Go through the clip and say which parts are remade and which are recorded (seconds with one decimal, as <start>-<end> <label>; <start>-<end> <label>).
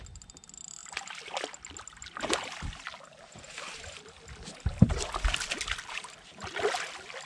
0.0-7.3 recorded